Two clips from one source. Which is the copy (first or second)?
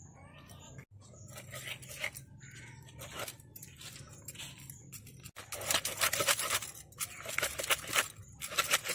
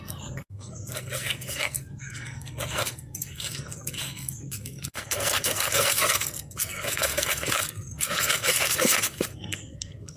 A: second